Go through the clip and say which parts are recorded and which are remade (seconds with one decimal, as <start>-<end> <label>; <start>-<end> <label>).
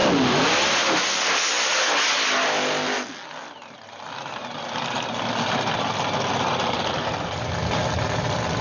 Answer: 0.0-8.6 recorded